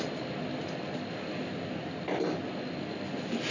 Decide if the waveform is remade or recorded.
recorded